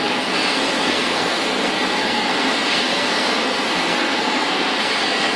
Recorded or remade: remade